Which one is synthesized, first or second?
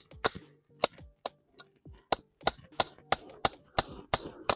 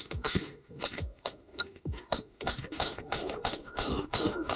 second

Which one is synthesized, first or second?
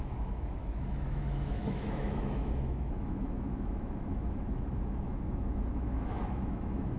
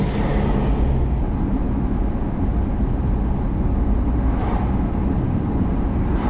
first